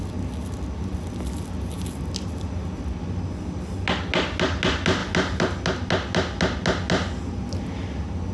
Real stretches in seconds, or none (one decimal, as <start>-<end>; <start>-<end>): 0.0-8.3